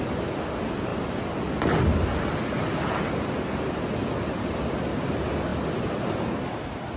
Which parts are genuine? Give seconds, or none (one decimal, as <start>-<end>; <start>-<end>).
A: 0.0-7.0